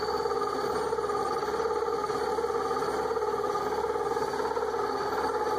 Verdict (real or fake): real